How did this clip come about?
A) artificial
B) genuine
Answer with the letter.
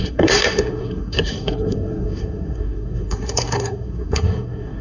A